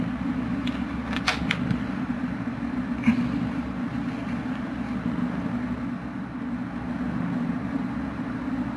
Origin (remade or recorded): recorded